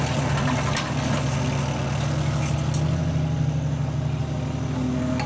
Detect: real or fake real